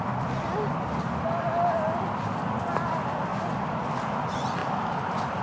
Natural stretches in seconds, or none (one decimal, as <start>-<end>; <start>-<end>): 0.0-5.4